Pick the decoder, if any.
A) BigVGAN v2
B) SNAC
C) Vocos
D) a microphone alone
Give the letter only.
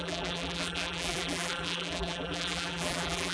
A